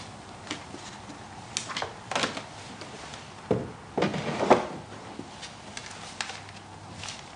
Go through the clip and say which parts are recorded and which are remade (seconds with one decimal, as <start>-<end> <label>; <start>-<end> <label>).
0.0-7.4 recorded